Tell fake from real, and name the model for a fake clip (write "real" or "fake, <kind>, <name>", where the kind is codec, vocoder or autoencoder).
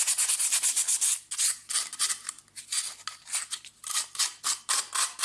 real